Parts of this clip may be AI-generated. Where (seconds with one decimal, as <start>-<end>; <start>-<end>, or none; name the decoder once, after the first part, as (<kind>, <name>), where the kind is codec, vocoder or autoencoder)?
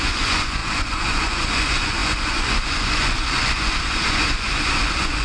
0.0-5.2 (vocoder, Vocos)